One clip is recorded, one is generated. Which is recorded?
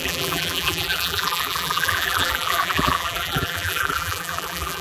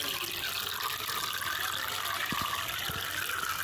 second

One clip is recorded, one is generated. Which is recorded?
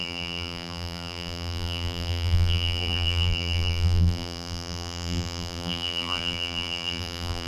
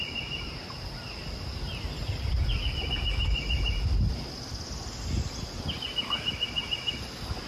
second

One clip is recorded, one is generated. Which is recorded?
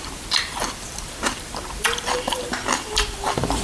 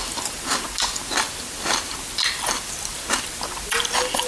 second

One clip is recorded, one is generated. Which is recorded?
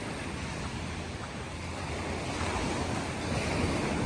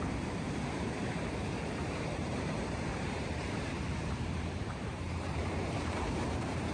first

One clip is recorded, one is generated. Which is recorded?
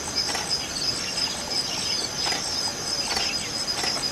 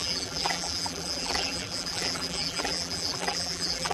first